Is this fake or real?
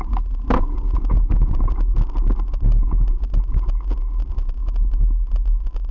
real